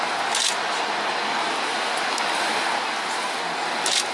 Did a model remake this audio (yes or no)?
no